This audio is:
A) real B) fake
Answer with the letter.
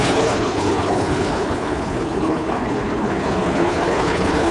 B